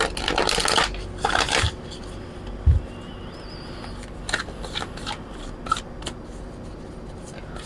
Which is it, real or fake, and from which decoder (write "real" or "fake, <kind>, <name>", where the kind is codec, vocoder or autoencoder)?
real